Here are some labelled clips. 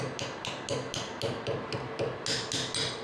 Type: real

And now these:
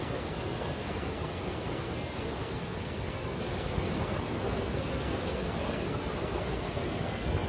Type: fake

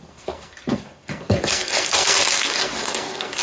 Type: fake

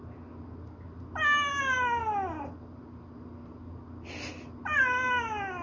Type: real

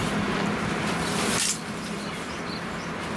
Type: real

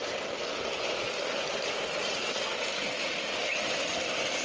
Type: real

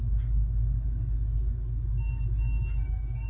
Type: real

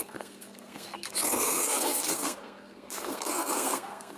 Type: fake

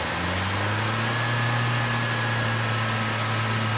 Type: real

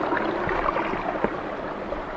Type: real